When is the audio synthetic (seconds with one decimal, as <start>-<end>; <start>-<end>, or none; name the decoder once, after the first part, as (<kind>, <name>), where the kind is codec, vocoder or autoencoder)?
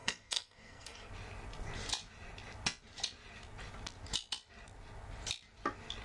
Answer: 0.0-1.1 (codec, SNAC)